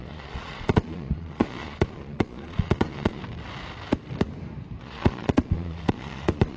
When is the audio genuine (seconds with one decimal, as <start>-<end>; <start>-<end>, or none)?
3.2-4.8